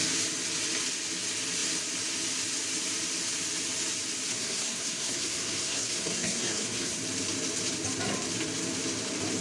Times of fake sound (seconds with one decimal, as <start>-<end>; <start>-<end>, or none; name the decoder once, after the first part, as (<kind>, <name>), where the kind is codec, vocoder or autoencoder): 4.3-7.0 (codec, SNAC)

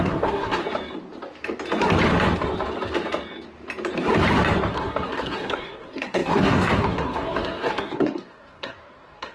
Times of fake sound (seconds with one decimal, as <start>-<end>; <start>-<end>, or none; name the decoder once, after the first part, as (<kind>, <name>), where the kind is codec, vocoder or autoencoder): 0.0-0.6 (codec, SNAC); 4.7-9.3

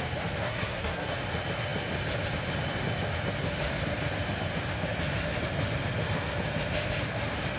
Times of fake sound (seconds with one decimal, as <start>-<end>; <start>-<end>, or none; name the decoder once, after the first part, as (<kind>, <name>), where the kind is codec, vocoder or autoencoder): 0.4-1.1 (codec, SNAC)

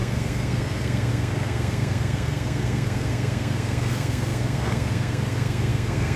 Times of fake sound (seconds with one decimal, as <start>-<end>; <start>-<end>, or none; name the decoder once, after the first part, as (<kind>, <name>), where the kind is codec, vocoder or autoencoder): 0.0-6.2 (codec, SNAC)